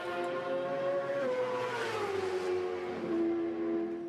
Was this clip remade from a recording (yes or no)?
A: no